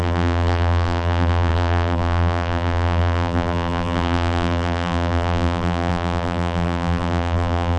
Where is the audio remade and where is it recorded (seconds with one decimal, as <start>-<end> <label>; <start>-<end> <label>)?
0.0-7.8 remade